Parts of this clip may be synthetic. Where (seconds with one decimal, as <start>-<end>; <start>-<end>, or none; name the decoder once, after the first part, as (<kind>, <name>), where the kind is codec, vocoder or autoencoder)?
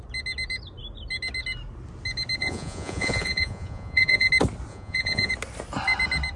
2.4-4.3 (vocoder, Vocos); 4.7-5.3